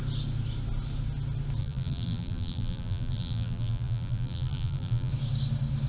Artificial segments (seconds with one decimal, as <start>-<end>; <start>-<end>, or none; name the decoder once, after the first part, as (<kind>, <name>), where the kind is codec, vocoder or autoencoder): 1.6-5.1 (vocoder, BigVGAN v2)